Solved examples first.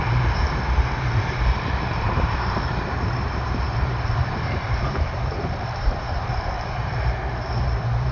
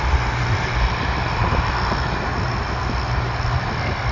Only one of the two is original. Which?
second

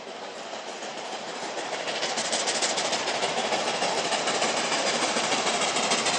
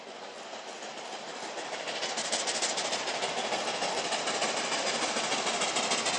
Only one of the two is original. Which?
second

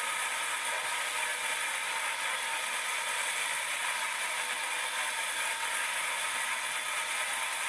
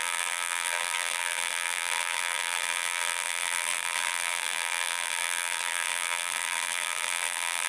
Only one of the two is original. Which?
first